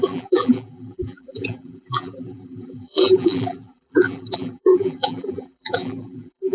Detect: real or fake fake